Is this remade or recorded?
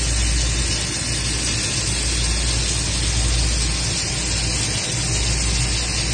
recorded